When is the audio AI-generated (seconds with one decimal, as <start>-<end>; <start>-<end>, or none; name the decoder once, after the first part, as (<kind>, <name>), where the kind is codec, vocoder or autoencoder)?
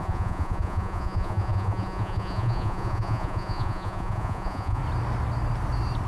0.0-4.8 (vocoder, Vocos)